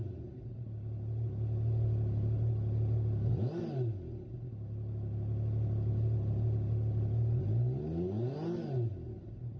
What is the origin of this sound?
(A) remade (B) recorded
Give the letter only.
B